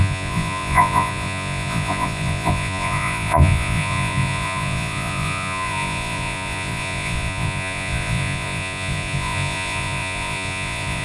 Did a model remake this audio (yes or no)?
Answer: yes